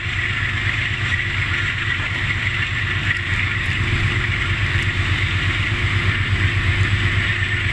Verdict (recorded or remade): remade